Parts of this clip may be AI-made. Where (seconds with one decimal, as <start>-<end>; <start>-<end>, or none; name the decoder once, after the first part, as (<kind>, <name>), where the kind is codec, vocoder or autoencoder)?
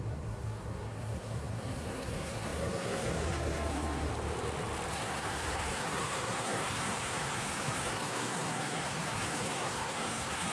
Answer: 0.0-4.1 (codec, SNAC); 4.9-10.5